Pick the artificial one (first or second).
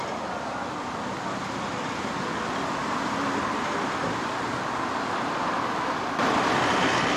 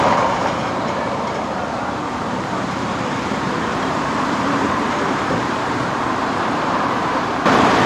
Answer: second